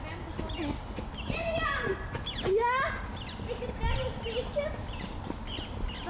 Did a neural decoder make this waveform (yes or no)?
no